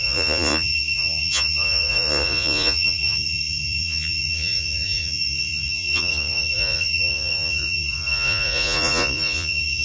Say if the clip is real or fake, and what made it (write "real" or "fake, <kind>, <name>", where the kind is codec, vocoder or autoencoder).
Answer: fake, vocoder, Vocos